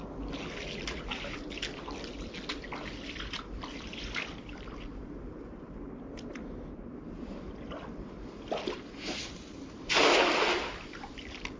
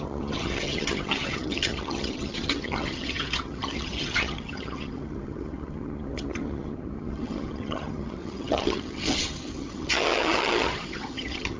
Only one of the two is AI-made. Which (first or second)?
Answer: second